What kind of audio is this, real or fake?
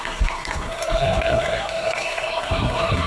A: fake